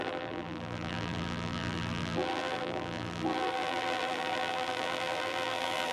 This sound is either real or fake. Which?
fake